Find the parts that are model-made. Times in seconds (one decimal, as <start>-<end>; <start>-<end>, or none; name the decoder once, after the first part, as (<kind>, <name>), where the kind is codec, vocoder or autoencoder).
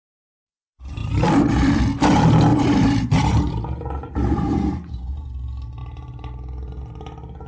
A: 1.0-1.8 (vocoder, BigVGAN v2); 2.5-5.1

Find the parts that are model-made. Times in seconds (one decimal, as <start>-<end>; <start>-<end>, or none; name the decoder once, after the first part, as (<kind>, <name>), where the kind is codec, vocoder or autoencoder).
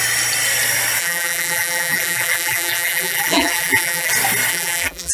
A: 1.0-4.1 (vocoder, BigVGAN v2); 4.5-5.1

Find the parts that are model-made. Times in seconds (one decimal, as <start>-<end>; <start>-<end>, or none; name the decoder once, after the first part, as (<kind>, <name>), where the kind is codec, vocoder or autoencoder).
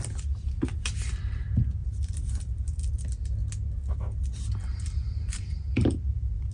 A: 1.8-2.5 (vocoder, BigVGAN v2); 4.6-6.5